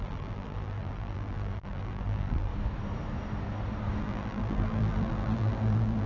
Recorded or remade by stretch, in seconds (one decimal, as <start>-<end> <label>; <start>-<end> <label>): 0.0-2.5 remade; 2.5-4.0 recorded; 4.0-6.1 remade